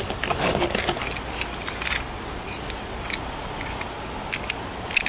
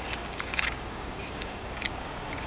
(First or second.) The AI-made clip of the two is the second